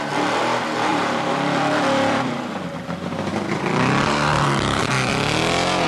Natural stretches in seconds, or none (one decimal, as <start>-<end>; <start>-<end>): 0.0-0.9; 2.4-5.9

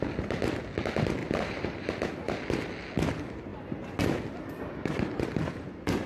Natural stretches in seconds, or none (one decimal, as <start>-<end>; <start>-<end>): 0.0-1.2; 1.9-6.1

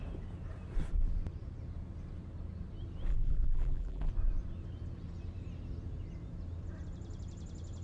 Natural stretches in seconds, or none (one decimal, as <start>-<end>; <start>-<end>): 0.0-3.1; 4.1-7.8

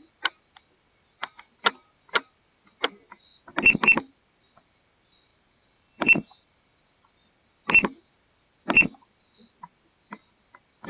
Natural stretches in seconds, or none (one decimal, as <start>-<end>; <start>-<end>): 0.0-5.3; 6.6-10.9

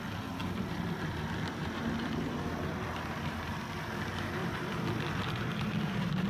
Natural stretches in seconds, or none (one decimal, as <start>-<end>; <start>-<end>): 0.0-0.4; 3.2-4.4; 5.1-6.3

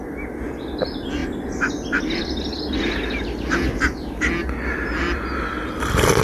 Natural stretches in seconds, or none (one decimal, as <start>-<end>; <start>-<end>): 0.0-6.2